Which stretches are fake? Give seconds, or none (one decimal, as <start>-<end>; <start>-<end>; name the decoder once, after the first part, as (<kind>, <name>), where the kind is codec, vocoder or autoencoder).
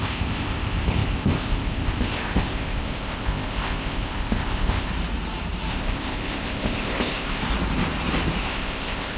0.0-4.9 (codec, ZipCodec); 5.7-7.4; 8.4-9.2